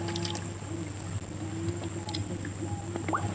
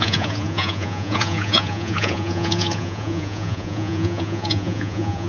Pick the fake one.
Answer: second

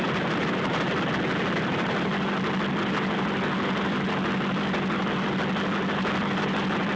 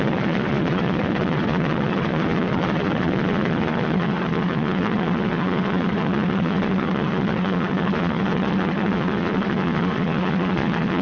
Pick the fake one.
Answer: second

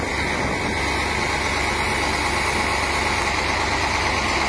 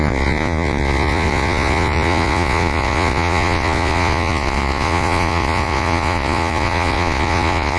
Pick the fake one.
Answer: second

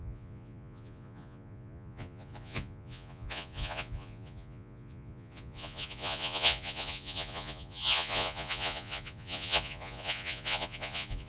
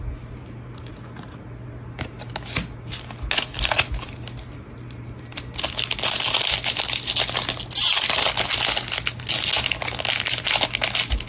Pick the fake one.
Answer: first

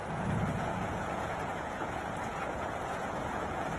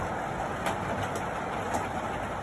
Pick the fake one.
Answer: first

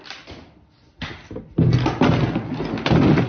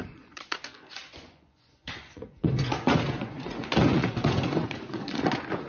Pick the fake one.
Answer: second